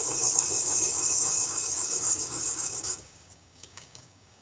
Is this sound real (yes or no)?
no